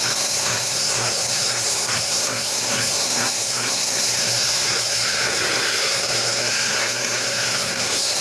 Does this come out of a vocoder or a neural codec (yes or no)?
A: yes